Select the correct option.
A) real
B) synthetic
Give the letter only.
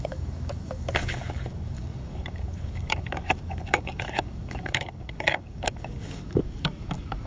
B